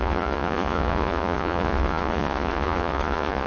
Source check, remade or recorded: remade